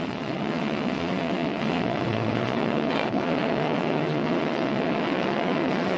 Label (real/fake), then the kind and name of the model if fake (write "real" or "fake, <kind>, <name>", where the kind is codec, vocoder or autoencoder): fake, vocoder, WaveNeXt